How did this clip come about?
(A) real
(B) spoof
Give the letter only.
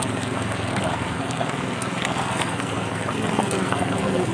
B